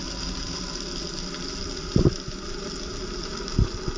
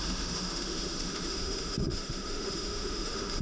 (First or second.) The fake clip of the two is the second